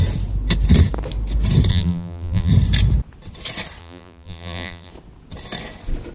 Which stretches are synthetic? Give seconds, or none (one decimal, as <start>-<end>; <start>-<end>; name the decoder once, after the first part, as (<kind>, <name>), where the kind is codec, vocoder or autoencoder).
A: 1.7-2.5 (vocoder, BigVGAN v2); 3.8-4.9